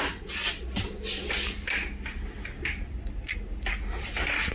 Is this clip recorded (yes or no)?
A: yes